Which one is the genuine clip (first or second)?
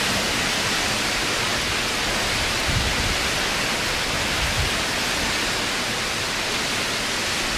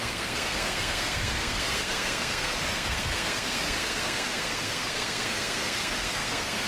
first